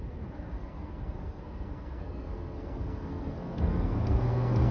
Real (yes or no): no